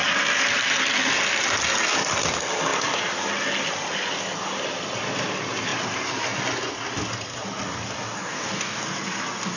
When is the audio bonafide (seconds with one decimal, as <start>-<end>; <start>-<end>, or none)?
0.0-8.2; 8.8-9.6